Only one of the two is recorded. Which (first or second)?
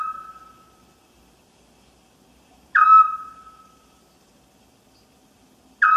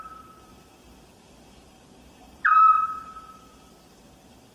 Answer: first